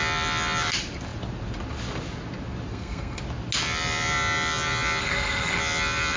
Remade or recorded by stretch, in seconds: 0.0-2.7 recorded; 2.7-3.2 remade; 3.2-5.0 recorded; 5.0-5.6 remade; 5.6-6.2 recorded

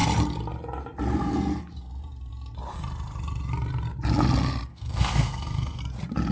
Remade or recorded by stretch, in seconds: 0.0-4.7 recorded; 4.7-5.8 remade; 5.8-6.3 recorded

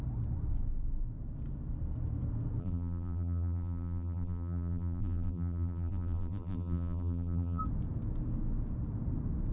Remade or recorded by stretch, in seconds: 0.0-2.6 recorded; 2.6-7.6 remade; 7.6-9.5 recorded

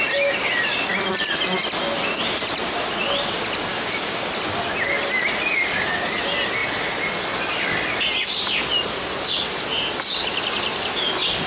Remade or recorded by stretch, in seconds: 0.0-3.7 recorded; 3.7-4.3 remade; 4.3-11.5 recorded